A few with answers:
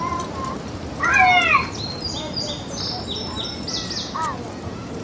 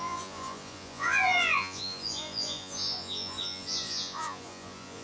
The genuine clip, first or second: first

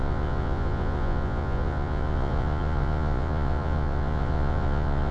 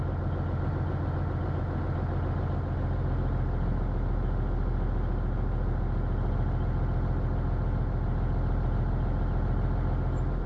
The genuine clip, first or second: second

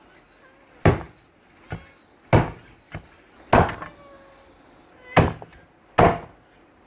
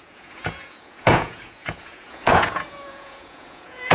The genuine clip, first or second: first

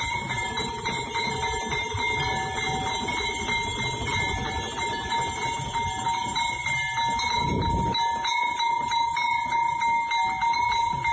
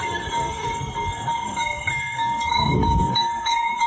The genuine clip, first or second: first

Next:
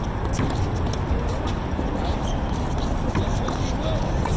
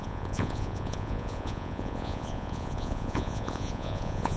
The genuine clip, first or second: first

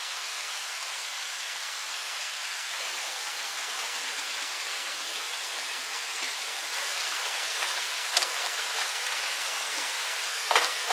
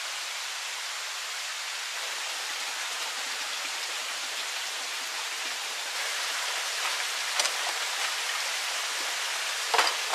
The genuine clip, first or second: second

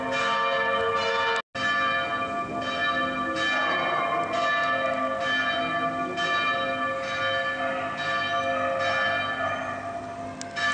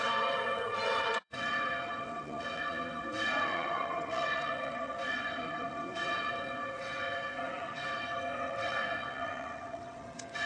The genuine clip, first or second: first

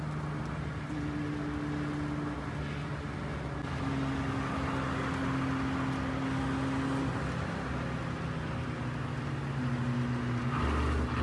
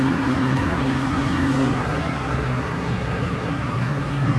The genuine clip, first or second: first